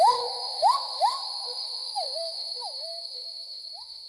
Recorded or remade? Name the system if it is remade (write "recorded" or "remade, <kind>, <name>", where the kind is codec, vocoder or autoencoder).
remade, autoencoder, DAC-VAE